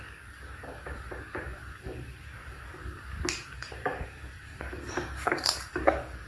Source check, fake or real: fake